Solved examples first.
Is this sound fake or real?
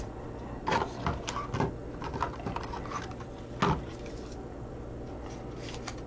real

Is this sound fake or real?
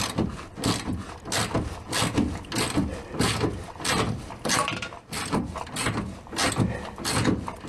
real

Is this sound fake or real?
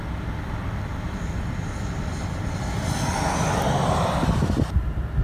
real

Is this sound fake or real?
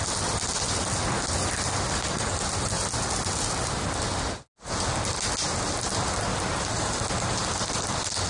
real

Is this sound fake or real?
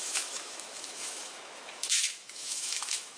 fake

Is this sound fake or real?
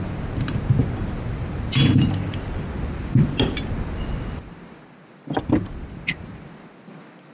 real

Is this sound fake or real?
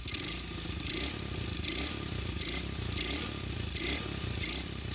real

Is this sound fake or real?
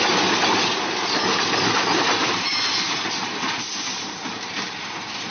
real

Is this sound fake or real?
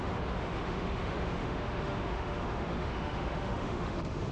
fake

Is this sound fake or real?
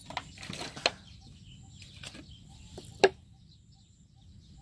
real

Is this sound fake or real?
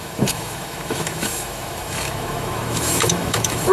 fake